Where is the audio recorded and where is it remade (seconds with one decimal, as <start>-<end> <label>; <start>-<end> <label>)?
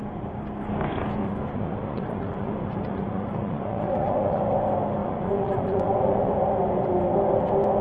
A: 0.0-1.2 recorded; 1.2-4.4 remade; 4.4-5.0 recorded; 5.0-6.3 remade; 6.3-7.8 recorded